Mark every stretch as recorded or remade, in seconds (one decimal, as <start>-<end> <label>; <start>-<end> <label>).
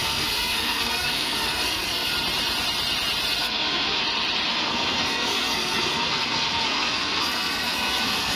0.0-2.1 remade; 2.1-3.4 recorded; 3.4-4.0 remade; 4.0-4.5 recorded; 4.5-8.4 remade